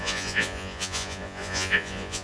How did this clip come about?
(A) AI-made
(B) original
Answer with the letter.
A